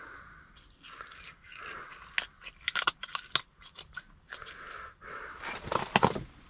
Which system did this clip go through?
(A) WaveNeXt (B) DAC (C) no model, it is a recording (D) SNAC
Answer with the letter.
C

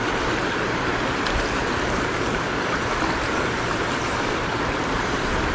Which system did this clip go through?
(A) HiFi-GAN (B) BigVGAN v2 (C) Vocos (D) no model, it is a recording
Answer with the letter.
B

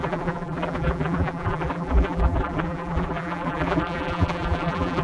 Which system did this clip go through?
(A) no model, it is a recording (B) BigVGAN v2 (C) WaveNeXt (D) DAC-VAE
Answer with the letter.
B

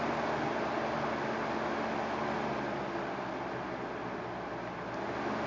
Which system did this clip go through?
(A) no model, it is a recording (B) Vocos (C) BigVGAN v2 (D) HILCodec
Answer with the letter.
A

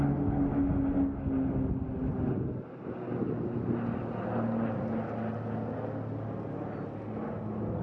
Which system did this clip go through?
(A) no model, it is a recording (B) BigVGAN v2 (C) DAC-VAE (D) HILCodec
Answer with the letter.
A